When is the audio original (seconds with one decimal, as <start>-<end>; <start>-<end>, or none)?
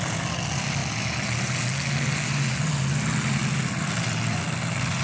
0.0-5.0